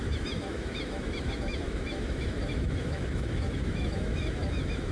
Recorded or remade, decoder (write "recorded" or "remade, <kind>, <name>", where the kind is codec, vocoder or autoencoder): remade, autoencoder, DAC-VAE